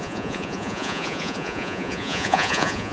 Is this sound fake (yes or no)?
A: yes